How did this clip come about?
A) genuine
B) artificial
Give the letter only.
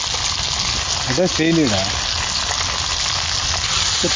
A